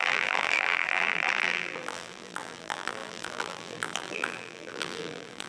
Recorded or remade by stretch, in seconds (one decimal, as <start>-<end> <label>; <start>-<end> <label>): 0.0-5.5 remade